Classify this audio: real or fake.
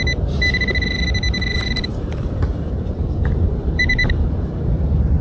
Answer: fake